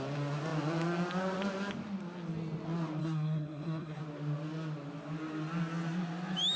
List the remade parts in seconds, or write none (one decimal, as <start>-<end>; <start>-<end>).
3.0-4.0